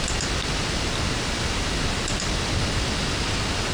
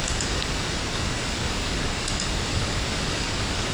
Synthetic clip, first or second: second